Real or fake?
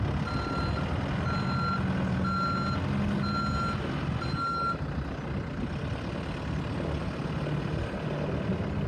real